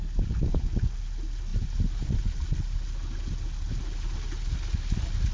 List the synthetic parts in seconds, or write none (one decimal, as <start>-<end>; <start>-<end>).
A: none